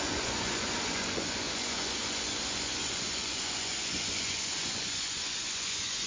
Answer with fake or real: fake